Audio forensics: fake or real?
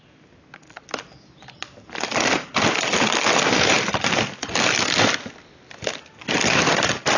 real